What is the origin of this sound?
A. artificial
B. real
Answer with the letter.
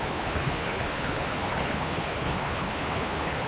A